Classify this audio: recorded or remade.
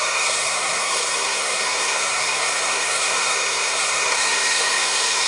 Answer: remade